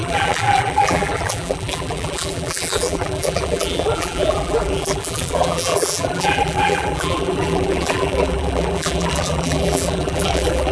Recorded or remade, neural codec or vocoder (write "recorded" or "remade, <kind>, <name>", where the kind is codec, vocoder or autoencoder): remade, vocoder, BigVGAN v2